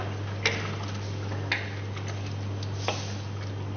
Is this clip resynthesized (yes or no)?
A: no